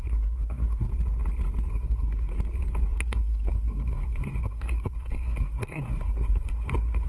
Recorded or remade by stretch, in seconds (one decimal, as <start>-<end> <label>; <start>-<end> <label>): 0.0-0.9 remade; 0.9-1.7 recorded; 1.7-2.3 remade; 2.3-2.8 recorded; 2.8-7.1 remade